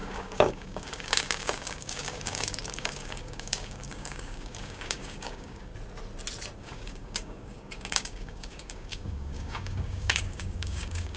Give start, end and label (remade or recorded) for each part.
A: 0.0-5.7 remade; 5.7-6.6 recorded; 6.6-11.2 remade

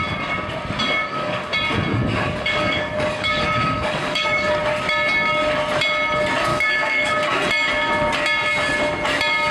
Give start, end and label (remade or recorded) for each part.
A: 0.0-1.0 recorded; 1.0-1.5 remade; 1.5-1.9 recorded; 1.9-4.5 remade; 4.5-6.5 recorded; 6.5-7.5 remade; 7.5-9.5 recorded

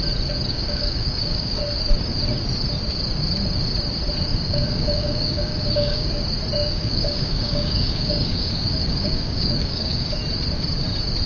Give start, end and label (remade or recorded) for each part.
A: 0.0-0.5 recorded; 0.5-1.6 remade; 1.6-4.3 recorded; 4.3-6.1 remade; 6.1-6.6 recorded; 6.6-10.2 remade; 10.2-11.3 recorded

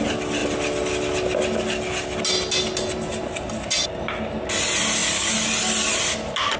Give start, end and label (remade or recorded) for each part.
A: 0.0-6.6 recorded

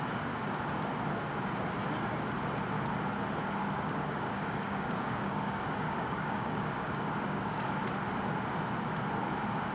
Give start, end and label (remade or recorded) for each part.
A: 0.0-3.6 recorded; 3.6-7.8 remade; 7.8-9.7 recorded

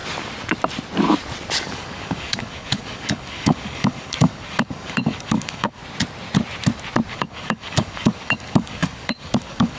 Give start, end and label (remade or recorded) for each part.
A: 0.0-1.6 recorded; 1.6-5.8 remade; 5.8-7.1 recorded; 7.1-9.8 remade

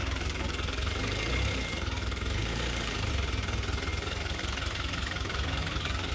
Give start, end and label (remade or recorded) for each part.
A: 0.0-3.1 remade; 3.1-3.9 recorded; 3.9-6.1 remade

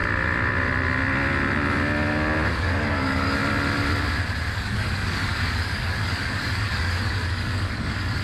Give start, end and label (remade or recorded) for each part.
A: 0.0-2.6 recorded; 2.6-3.4 remade; 3.4-4.5 recorded; 4.5-8.2 remade